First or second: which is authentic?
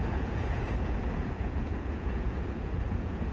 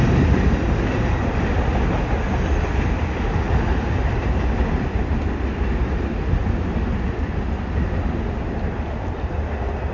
second